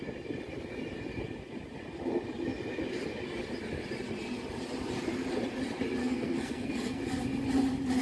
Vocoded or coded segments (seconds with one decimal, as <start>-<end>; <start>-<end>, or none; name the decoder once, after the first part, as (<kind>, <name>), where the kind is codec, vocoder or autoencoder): 6.0-7.0 (codec, SNAC)